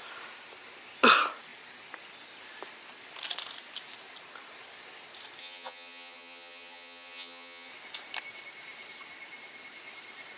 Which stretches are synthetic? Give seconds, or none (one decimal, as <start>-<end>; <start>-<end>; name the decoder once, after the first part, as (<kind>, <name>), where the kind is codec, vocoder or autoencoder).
5.4-7.7 (vocoder, HiFi-GAN)